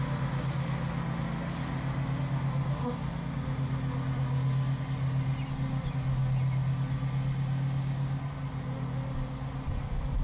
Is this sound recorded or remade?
recorded